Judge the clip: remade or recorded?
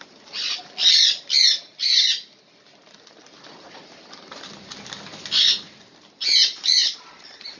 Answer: recorded